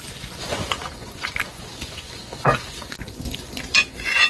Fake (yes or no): yes